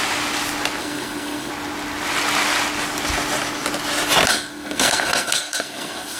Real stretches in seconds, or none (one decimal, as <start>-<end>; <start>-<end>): 0.0-0.8; 1.5-4.3